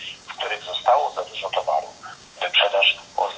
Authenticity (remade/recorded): remade